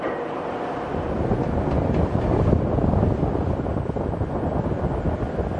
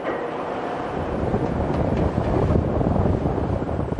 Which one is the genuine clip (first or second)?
first